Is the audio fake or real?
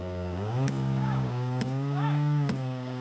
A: fake